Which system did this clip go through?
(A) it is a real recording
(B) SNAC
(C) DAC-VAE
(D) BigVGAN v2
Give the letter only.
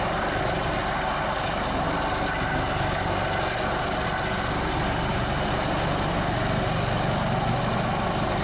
A